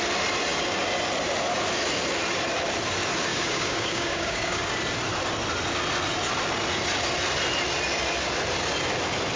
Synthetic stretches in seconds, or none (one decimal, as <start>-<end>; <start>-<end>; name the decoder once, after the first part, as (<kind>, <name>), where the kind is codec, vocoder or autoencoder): 3.3-4.7 (codec, DAC)